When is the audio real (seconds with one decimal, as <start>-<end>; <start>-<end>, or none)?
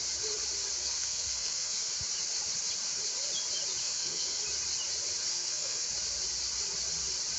0.0-0.8; 1.9-3.8; 4.4-5.3; 5.9-7.4